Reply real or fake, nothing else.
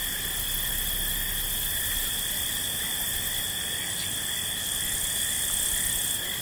real